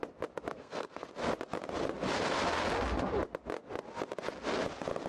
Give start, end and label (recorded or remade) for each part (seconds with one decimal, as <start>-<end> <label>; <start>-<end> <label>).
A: 0.0-0.5 recorded; 0.5-1.1 remade; 1.1-5.1 recorded